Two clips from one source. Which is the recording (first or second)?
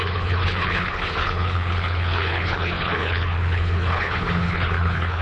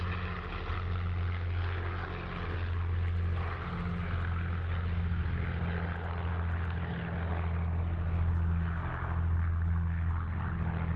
second